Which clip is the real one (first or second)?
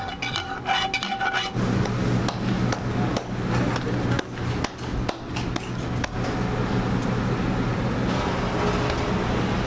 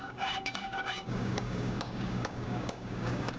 first